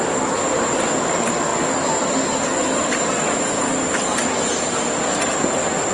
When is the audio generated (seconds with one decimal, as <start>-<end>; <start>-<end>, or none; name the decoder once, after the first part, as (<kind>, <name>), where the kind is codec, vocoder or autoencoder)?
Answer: none